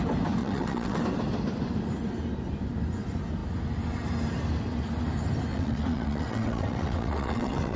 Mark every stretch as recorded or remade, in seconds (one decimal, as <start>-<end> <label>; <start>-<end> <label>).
0.0-0.4 recorded; 0.4-1.0 remade; 1.0-5.5 recorded; 5.5-7.8 remade